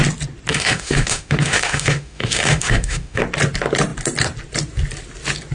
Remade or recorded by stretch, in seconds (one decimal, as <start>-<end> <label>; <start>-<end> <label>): 0.0-0.5 recorded; 0.5-3.2 remade; 3.2-5.5 recorded